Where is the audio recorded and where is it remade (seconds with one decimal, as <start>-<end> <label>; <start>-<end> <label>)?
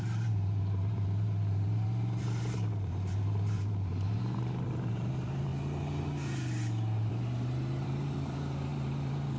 0.0-5.5 remade; 5.5-7.1 recorded; 7.1-9.4 remade